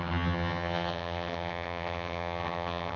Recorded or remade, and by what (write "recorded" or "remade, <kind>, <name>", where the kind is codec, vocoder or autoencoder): remade, vocoder, HiFi-GAN